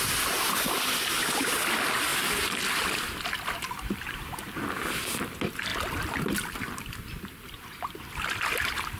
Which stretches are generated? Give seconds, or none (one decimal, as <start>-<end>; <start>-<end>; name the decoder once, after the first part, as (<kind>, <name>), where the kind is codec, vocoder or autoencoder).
none